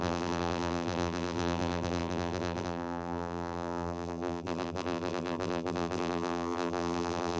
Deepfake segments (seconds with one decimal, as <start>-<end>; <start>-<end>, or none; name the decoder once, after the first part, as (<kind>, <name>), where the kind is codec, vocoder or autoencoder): 0.0-7.4 (vocoder, BigVGAN v2)